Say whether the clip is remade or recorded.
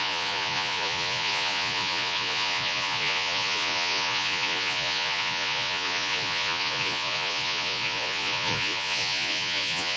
remade